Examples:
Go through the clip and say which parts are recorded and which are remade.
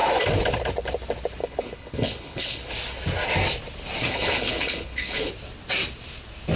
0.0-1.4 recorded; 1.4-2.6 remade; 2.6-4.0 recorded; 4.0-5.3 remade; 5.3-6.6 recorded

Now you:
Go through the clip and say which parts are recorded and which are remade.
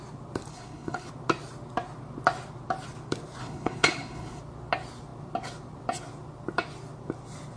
0.0-0.5 recorded; 0.5-1.1 remade; 1.1-3.4 recorded; 3.4-4.4 remade; 4.4-7.6 recorded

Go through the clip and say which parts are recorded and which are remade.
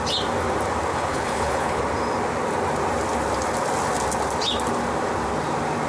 0.0-0.9 recorded; 0.9-1.8 remade; 1.8-5.9 recorded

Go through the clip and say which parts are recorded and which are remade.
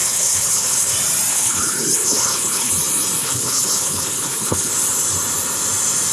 0.0-0.9 remade; 0.9-1.3 recorded; 1.3-2.7 remade; 2.7-3.2 recorded; 3.2-4.7 remade; 4.7-6.1 recorded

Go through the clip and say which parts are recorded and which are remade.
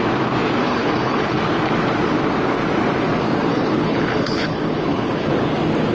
0.0-0.6 recorded; 0.6-1.4 remade; 1.4-3.5 recorded; 3.5-5.3 remade; 5.3-5.9 recorded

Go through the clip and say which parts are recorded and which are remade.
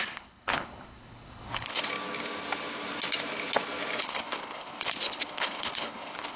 0.0-1.8 remade; 1.8-4.0 recorded; 4.0-6.4 remade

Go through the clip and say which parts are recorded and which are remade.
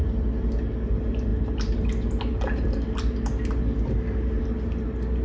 0.0-5.2 recorded